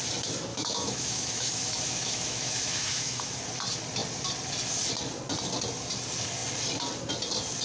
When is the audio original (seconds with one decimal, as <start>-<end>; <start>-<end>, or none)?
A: 0.0-0.5; 3.4-7.6